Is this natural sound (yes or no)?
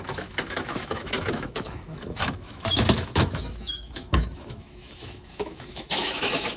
no